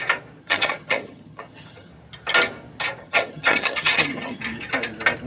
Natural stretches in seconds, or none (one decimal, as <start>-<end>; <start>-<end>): 0.0-0.4; 1.9-3.0; 4.4-5.3